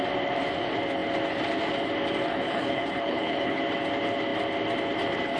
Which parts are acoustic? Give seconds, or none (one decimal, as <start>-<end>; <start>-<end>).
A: 0.0-2.3; 3.6-5.4